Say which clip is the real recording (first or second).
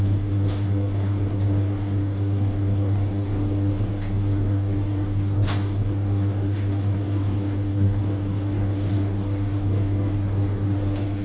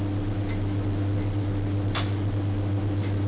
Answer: second